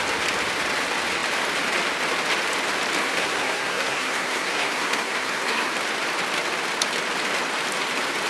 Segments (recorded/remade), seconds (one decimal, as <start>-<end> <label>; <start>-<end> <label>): 0.0-3.0 recorded; 3.0-5.7 remade; 5.7-8.3 recorded